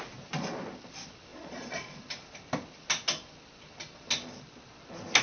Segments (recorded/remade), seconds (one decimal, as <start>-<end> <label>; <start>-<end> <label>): 0.0-1.3 recorded; 1.3-2.0 remade; 2.0-5.2 recorded